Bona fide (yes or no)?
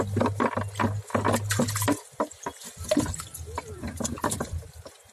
yes